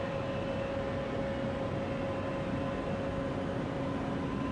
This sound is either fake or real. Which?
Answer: real